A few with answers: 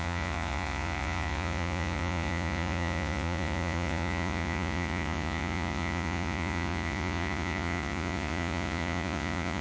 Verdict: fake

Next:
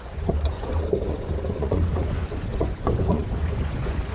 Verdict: fake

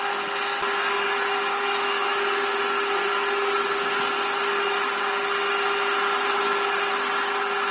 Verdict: real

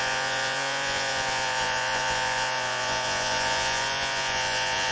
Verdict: fake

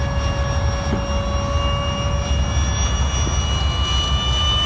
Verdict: real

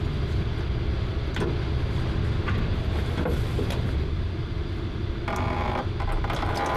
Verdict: real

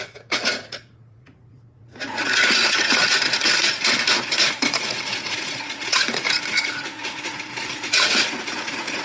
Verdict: fake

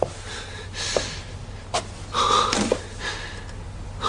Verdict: real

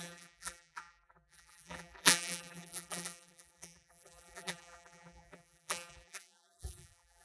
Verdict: fake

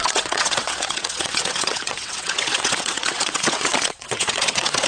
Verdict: fake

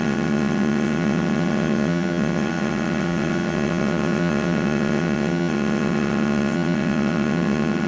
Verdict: fake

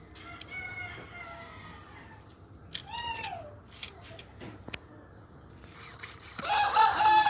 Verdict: real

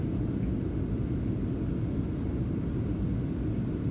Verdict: real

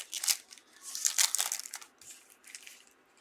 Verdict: real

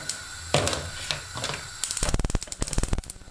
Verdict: real